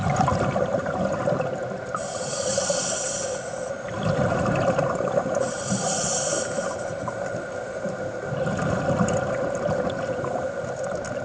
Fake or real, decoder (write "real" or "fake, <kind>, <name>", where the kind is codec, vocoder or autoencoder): real